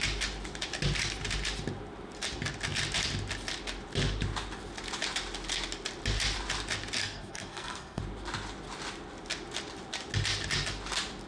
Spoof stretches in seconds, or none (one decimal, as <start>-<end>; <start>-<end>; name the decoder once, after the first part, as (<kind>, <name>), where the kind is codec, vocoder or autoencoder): 7.0-8.0 (codec, SNAC)